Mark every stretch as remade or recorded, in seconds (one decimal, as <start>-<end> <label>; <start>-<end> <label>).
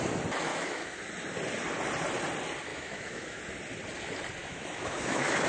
0.0-0.5 recorded; 0.5-1.0 remade; 1.0-2.7 recorded; 2.7-3.4 remade; 3.4-4.4 recorded; 4.4-5.5 remade